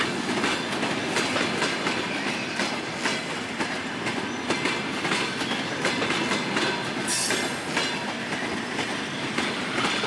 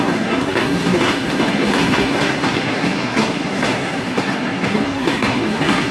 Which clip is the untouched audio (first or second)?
first